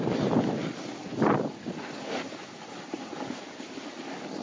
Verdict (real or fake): real